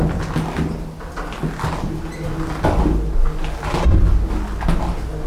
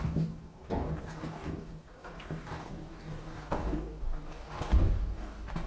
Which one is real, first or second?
first